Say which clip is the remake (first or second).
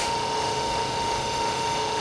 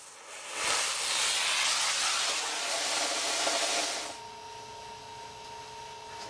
first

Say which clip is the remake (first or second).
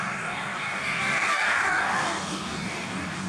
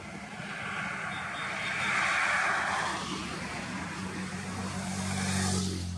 first